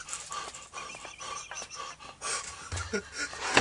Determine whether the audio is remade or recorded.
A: recorded